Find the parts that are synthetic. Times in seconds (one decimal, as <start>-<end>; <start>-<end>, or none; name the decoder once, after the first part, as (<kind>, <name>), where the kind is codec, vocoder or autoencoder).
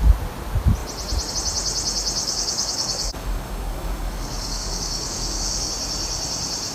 2.2-5.7 (codec, DAC)